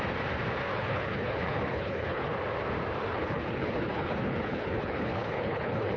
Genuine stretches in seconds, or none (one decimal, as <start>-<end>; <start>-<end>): 0.0-0.7; 2.3-3.0